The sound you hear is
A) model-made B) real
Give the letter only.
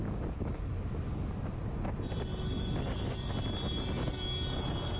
B